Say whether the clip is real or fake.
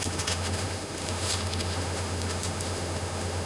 fake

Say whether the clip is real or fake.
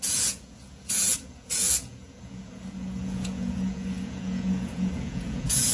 fake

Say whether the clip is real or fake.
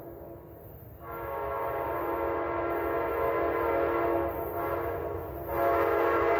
real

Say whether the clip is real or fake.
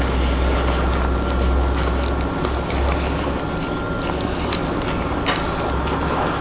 real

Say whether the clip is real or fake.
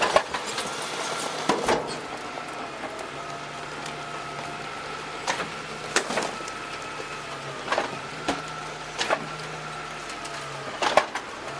real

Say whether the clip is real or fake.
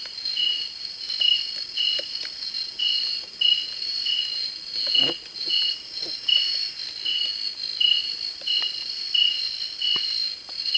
real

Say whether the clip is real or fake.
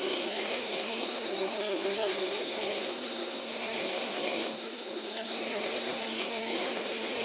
fake